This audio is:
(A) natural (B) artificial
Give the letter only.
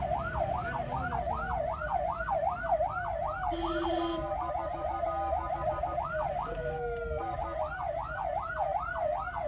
A